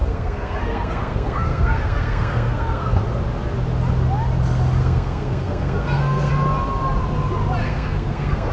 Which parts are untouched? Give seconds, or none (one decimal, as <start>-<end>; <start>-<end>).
3.0-4.8; 6.3-7.6